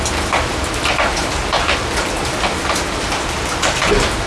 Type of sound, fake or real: real